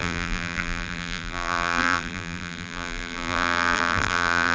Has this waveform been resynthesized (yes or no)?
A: yes